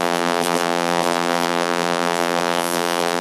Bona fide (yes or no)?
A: no